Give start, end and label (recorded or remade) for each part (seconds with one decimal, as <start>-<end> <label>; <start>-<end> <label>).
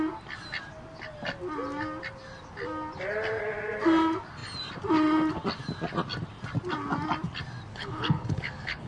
0.0-7.7 recorded; 7.7-8.9 remade